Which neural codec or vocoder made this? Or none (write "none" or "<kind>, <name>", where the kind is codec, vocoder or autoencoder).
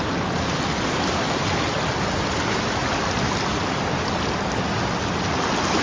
none